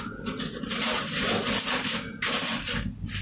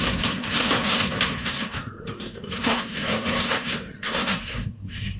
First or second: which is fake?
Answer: second